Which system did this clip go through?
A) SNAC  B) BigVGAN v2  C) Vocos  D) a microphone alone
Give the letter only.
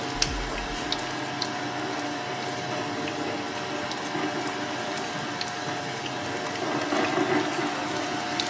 D